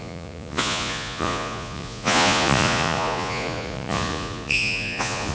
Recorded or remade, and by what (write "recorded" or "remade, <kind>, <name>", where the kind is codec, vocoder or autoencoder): remade, vocoder, Vocos